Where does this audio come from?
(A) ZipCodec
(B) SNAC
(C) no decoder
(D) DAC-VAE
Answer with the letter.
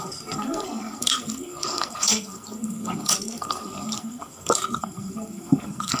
B